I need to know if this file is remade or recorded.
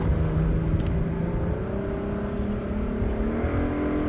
recorded